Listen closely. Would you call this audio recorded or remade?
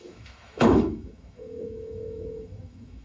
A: remade